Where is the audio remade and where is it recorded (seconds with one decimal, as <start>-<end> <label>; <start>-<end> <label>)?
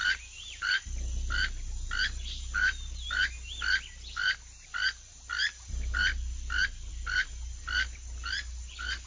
0.0-9.1 recorded